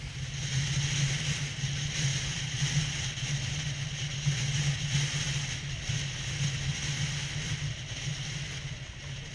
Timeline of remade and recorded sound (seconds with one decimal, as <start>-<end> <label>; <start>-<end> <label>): 0.0-9.3 recorded